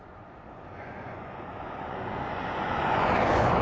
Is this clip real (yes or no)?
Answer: no